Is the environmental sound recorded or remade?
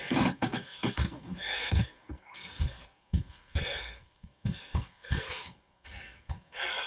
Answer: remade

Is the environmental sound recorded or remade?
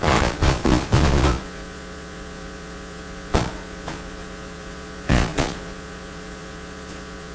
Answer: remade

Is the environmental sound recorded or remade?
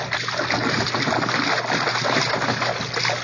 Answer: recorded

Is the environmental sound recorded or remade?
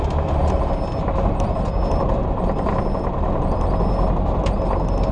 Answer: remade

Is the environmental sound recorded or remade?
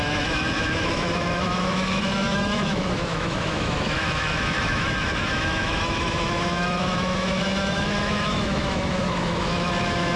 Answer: remade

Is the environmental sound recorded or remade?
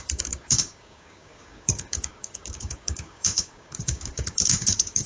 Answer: remade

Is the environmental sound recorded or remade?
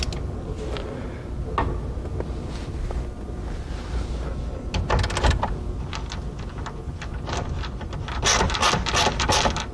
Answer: recorded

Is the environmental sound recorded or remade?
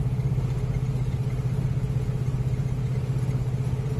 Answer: recorded